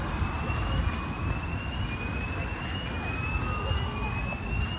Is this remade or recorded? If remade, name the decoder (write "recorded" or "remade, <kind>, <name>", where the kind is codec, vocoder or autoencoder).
recorded